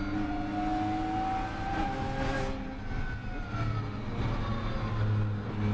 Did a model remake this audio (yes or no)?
no